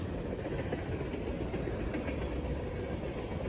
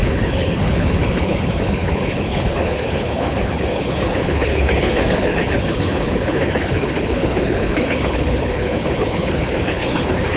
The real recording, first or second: first